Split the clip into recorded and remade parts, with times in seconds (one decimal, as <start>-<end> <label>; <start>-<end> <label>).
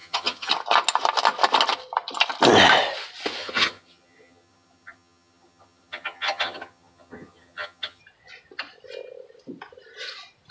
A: 0.0-0.5 remade; 0.5-3.4 recorded; 3.4-8.0 remade; 8.0-10.5 recorded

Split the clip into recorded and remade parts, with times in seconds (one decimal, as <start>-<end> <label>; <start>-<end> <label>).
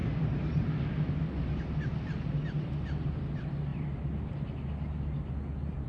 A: 0.0-5.9 recorded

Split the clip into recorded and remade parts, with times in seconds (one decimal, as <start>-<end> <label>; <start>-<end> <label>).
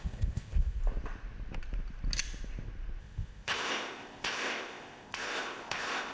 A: 0.0-0.8 remade; 0.8-3.0 recorded; 3.0-6.1 remade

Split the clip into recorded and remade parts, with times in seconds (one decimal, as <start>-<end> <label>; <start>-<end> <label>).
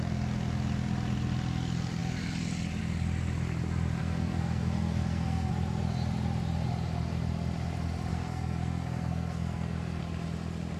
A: 0.0-4.0 recorded; 4.0-5.5 remade; 5.5-8.1 recorded; 8.1-10.0 remade; 10.0-10.8 recorded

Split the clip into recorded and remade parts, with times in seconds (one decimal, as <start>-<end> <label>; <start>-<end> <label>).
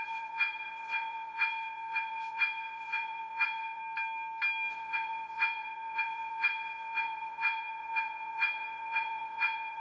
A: 0.0-3.8 remade; 3.8-4.7 recorded; 4.7-9.8 remade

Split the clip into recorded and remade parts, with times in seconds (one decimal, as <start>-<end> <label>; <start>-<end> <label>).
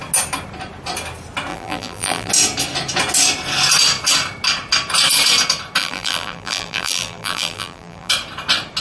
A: 0.0-1.5 recorded; 1.5-2.3 remade; 2.3-5.8 recorded; 5.8-8.1 remade; 8.1-8.8 recorded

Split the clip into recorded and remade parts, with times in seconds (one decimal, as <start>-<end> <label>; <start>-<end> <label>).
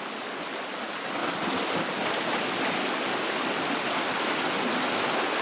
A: 0.0-5.4 recorded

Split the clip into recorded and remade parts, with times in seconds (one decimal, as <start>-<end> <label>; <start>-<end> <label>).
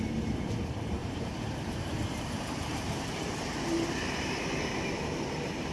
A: 0.0-1.0 recorded; 1.0-4.4 remade; 4.4-5.7 recorded